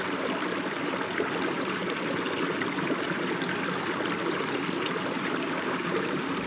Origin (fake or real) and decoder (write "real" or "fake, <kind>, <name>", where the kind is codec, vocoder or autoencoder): real